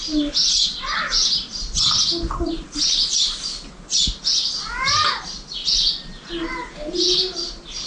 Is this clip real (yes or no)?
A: yes